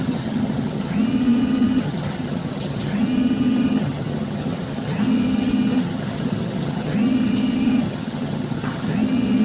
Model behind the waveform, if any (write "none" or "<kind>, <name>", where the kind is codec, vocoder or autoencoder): vocoder, HiFi-GAN